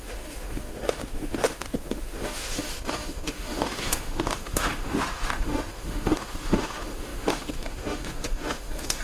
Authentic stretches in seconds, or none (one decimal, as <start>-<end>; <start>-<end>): none